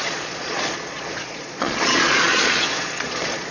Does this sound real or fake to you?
fake